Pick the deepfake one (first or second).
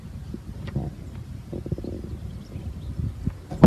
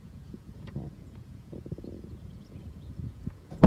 second